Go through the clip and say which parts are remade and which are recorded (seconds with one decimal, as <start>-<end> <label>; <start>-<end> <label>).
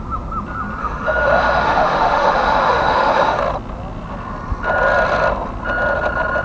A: 0.0-0.8 recorded; 0.8-3.4 remade; 3.4-6.4 recorded